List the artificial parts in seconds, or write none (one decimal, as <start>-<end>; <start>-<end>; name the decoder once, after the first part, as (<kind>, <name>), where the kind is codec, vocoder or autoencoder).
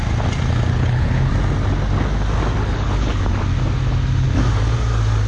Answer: 0.7-1.3 (codec, HILCodec); 2.6-3.2